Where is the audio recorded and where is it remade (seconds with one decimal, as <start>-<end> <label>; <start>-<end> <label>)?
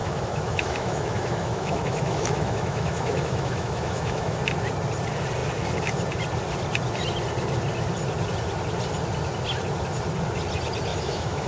0.0-4.4 remade; 4.4-10.9 recorded; 10.9-11.5 remade